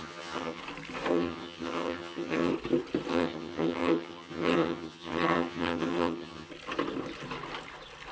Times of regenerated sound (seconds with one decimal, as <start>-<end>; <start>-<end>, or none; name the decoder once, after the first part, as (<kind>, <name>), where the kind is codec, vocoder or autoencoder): 0.0-0.6 (vocoder, HiFi-GAN); 1.1-2.5; 3.1-6.5